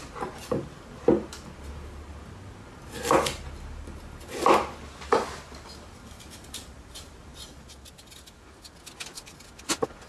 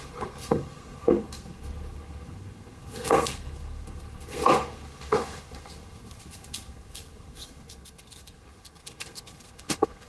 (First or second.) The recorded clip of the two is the first